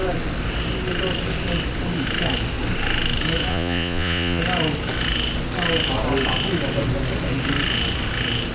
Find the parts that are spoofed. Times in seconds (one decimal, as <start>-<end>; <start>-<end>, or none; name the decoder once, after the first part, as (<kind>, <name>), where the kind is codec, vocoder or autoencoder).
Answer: 3.5-4.4 (vocoder, Vocos)